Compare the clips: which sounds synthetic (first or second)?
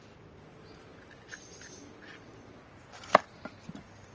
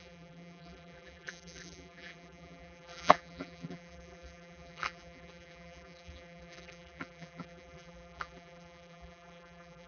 second